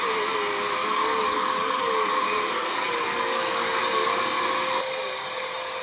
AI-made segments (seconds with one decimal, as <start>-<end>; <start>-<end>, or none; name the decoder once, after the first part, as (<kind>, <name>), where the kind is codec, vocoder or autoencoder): 0.8-4.2 (codec, DAC)